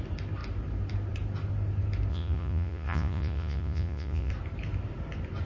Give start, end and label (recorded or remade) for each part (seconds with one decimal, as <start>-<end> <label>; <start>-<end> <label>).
0.0-2.1 recorded; 2.1-4.3 remade; 4.3-5.5 recorded